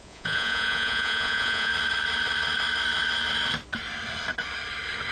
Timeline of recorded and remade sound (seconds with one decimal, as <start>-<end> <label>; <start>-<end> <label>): 0.0-1.7 remade; 1.7-5.1 recorded